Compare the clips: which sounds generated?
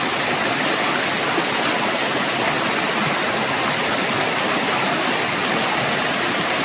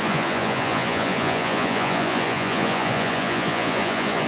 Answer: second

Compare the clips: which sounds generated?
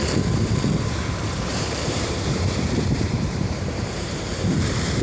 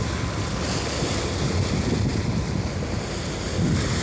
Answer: first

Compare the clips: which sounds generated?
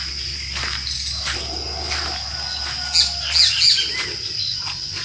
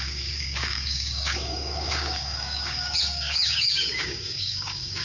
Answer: second